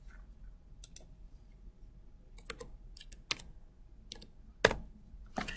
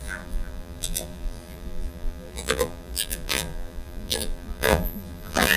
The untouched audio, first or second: first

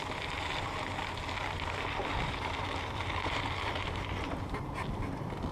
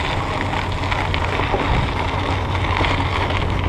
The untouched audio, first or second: second